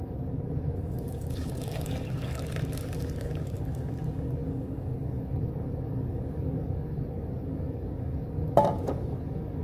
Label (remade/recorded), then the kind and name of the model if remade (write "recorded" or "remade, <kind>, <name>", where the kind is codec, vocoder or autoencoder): remade, codec, DAC